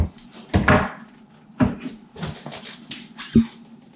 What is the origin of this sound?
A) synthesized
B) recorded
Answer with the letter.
B